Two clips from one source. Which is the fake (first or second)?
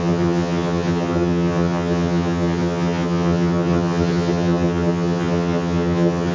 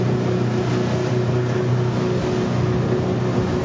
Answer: first